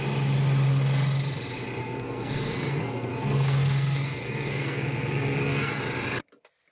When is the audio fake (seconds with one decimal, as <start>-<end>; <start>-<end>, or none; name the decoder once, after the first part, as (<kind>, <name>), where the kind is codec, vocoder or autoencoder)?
1.8-5.8 (codec, SNAC)